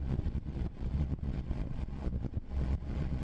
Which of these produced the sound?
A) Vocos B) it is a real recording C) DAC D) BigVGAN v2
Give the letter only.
A